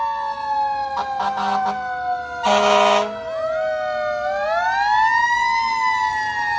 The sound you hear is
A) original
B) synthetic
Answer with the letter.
A